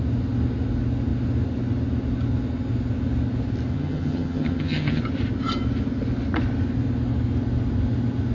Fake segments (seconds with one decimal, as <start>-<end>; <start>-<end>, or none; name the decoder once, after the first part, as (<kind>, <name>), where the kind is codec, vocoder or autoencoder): 3.7-5.0 (vocoder, HiFi-GAN)